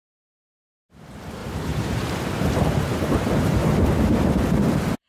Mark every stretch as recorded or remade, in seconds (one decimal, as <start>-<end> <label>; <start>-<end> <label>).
0.0-1.4 recorded; 1.4-3.8 remade; 3.8-5.1 recorded